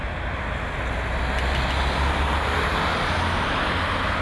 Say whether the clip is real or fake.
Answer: real